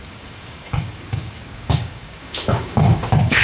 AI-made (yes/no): yes